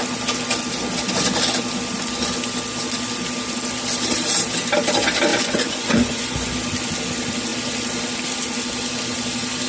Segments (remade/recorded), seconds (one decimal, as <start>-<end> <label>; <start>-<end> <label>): 0.0-5.3 recorded; 5.3-6.5 remade; 6.5-9.7 recorded

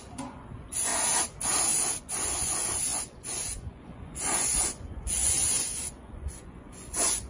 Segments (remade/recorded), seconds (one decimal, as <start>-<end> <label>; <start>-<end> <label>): 0.0-0.9 remade; 0.9-2.0 recorded; 2.0-7.3 remade

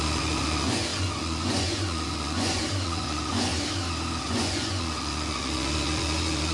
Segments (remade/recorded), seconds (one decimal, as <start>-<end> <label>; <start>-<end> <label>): 0.0-3.5 remade; 3.5-4.2 recorded; 4.2-6.5 remade